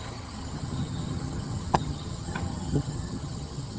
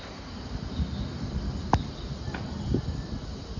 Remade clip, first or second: first